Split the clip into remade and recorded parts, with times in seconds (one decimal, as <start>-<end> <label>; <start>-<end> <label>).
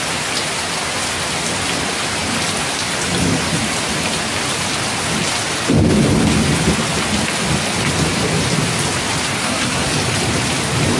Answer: 0.0-9.4 recorded; 9.4-9.9 remade; 9.9-11.0 recorded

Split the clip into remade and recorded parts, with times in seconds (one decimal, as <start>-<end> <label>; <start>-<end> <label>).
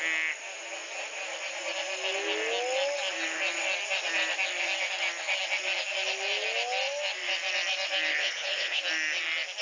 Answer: 0.0-8.1 recorded; 8.1-8.8 remade; 8.8-9.6 recorded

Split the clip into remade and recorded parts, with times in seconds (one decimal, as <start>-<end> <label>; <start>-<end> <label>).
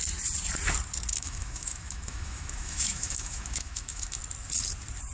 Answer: 0.0-1.1 recorded; 1.1-4.2 remade; 4.2-5.1 recorded